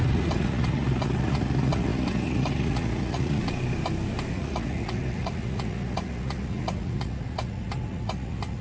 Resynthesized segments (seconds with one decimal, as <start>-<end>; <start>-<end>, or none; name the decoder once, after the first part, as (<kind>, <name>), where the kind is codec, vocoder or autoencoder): 0.0-3.4 (vocoder, Vocos); 4.3-8.6